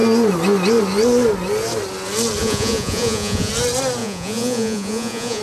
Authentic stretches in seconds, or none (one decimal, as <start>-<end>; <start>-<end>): 0.0-2.4; 3.5-4.0